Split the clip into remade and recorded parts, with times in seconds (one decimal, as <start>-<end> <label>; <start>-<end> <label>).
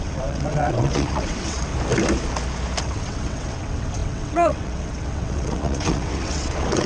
0.0-1.7 remade; 1.7-2.8 recorded; 2.8-6.9 remade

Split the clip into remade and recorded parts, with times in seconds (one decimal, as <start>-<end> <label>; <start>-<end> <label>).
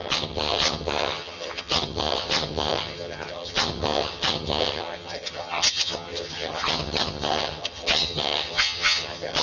0.0-9.4 remade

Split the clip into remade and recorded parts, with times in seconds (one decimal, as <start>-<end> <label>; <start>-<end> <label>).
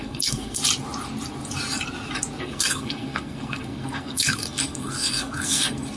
0.0-0.6 remade; 0.6-2.4 recorded; 2.4-6.0 remade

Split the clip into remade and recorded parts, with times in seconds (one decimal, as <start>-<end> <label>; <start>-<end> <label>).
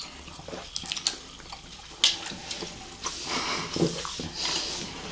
0.0-5.1 recorded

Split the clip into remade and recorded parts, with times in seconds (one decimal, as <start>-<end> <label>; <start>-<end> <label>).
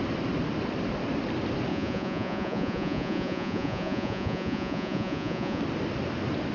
0.0-1.7 recorded; 1.7-5.6 remade; 5.6-6.5 recorded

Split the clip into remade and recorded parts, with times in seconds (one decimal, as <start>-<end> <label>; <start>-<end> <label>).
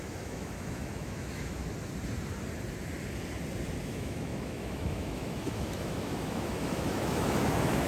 0.0-1.6 remade; 1.6-3.8 recorded; 3.8-7.9 remade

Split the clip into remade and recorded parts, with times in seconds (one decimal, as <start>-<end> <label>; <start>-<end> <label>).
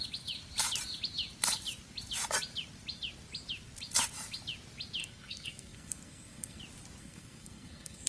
0.0-5.0 recorded; 5.0-6.6 remade; 6.6-7.0 recorded; 7.0-8.1 remade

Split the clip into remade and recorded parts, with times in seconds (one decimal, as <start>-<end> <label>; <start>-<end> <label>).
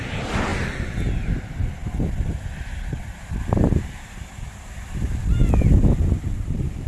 0.0-0.5 recorded; 0.5-1.3 remade; 1.3-5.4 recorded; 5.4-6.9 remade